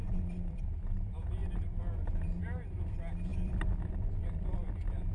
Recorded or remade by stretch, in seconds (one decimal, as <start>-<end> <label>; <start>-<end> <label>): 0.0-0.6 remade; 0.6-3.3 recorded; 3.3-3.9 remade; 3.9-5.1 recorded